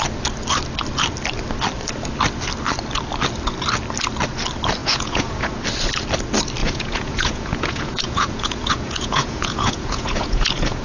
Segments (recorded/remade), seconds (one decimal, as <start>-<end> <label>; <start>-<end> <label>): 0.0-4.8 recorded; 4.8-5.5 remade; 5.5-6.6 recorded; 6.6-10.8 remade